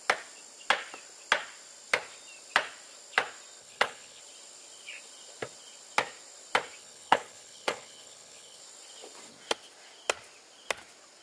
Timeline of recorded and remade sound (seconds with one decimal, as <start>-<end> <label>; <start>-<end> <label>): 0.0-3.6 recorded; 3.6-4.2 remade; 4.2-6.8 recorded; 6.8-8.6 remade; 8.6-11.2 recorded